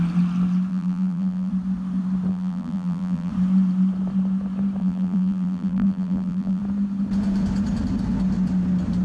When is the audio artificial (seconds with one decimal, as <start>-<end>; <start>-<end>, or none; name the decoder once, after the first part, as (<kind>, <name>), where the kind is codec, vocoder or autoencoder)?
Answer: 0.7-1.5 (vocoder, BigVGAN v2); 2.3-3.3; 4.8-6.6